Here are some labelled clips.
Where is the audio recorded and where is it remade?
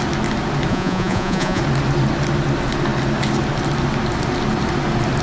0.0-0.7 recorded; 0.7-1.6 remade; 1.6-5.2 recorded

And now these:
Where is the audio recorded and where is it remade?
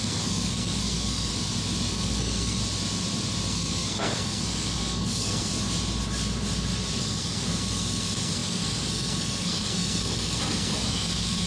0.0-1.3 remade; 1.3-1.9 recorded; 1.9-2.6 remade; 2.6-3.5 recorded; 3.5-5.5 remade; 5.5-7.0 recorded; 7.0-11.5 remade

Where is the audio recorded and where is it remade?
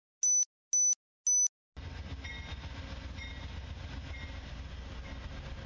0.0-5.7 recorded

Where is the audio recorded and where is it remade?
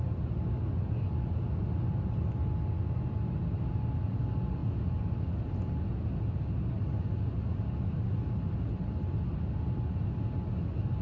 0.0-11.0 recorded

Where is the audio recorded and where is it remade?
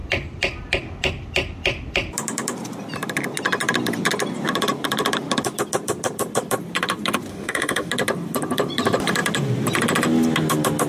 0.0-7.3 recorded; 7.3-7.9 remade; 7.9-10.9 recorded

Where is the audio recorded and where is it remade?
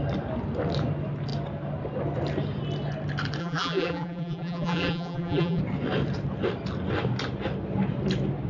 0.0-3.4 recorded; 3.4-5.6 remade; 5.6-8.5 recorded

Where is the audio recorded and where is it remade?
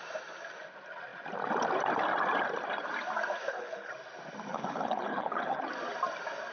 0.0-3.4 recorded; 3.4-3.9 remade; 3.9-4.5 recorded; 4.5-5.6 remade; 5.6-6.5 recorded